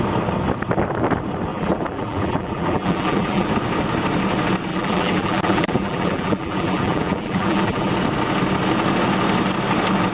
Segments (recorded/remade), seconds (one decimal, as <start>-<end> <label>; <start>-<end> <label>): 0.0-1.5 recorded; 1.5-3.5 remade; 3.5-4.7 recorded; 4.7-7.9 remade; 7.9-10.1 recorded